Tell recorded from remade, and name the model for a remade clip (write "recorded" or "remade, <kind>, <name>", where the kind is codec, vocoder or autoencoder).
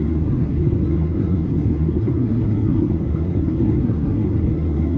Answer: remade, codec, SNAC